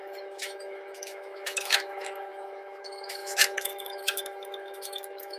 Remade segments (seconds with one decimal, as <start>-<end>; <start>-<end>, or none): 0.0-5.4